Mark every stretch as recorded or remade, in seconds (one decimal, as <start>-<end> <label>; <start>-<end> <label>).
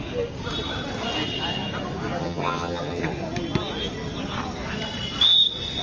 0.0-2.2 recorded; 2.2-3.1 remade; 3.1-5.8 recorded